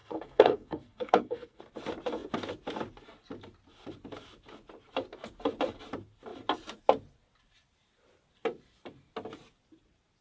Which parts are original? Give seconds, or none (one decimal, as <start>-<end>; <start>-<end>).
1.6-10.2